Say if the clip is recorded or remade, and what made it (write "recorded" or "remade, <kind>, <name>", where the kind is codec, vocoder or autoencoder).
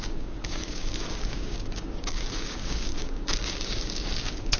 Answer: remade, codec, DAC